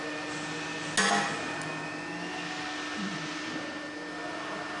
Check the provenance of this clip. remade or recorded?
recorded